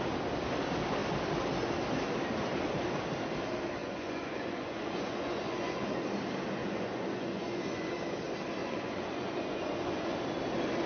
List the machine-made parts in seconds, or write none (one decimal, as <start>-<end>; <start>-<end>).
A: 3.8-5.9; 6.6-7.9; 8.6-10.2